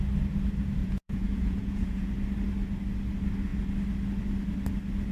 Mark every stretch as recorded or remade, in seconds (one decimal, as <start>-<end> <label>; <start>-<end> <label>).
0.0-0.8 recorded; 0.8-2.1 remade; 2.1-5.1 recorded